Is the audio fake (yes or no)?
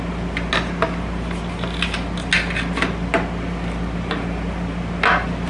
no